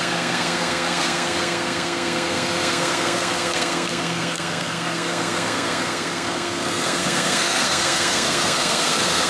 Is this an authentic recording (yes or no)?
no